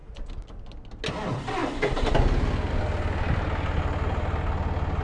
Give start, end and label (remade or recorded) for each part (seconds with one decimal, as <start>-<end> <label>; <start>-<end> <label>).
0.0-5.0 recorded